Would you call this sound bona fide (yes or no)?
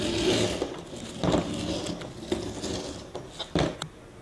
yes